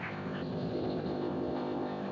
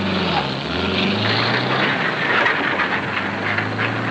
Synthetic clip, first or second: first